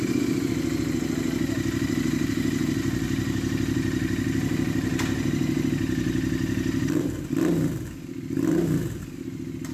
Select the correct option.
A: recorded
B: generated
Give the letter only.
A